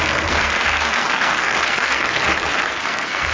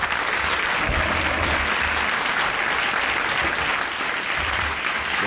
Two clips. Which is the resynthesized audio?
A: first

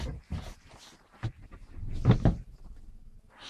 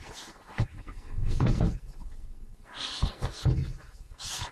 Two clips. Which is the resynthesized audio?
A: second